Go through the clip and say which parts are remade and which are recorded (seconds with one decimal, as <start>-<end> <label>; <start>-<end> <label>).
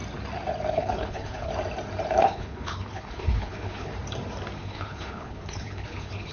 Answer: 0.0-0.7 recorded; 0.7-1.5 remade; 1.5-2.2 recorded; 2.2-3.9 remade; 3.9-4.6 recorded; 4.6-6.3 remade